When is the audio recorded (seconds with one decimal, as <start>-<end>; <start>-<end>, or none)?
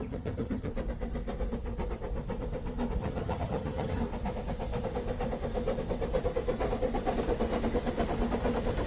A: 0.7-3.0; 4.0-8.9